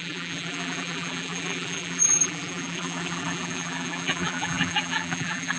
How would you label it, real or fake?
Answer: fake